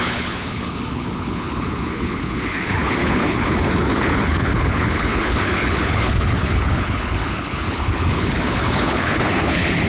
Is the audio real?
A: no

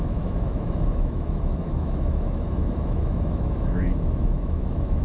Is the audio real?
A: no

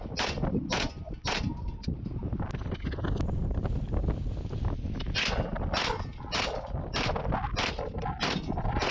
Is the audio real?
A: yes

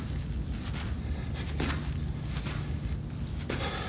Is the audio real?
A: yes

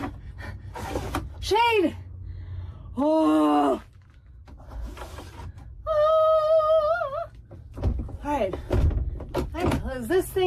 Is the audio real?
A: yes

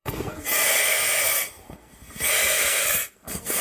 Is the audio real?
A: no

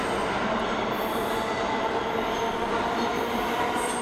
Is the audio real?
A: yes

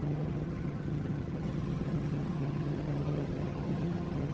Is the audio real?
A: no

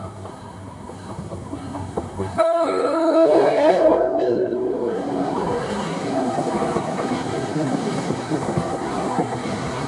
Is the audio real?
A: no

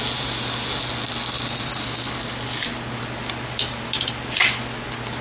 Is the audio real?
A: yes